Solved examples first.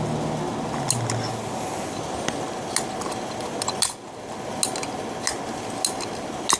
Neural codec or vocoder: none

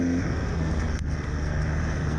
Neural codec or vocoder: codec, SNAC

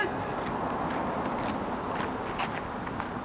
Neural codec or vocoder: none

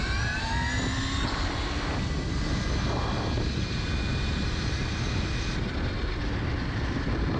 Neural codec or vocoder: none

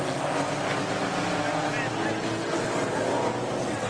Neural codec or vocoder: none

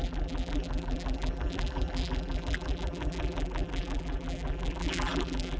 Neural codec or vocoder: vocoder, BigVGAN v2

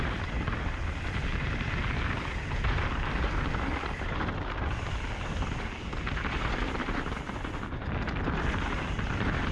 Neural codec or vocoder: none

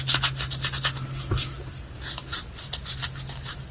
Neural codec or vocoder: none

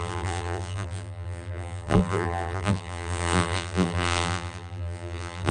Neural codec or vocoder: vocoder, BigVGAN v2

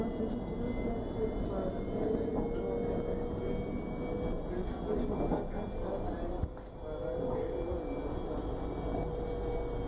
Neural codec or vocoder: none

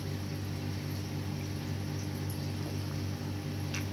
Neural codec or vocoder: none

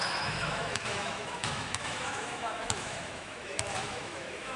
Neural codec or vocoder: autoencoder, DAC-VAE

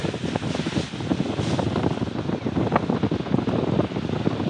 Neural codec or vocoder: none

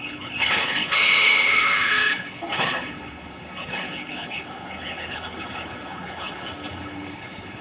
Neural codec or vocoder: codec, HILCodec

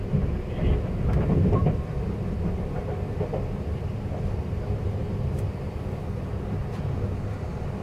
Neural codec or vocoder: none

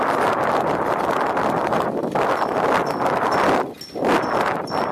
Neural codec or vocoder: none